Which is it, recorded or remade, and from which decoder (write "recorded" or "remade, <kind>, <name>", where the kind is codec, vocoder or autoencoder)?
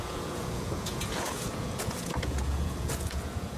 remade, vocoder, Vocos